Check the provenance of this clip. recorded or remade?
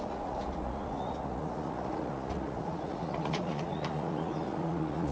remade